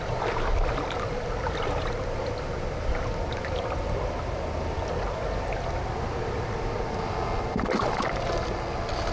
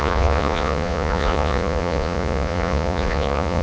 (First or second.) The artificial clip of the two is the second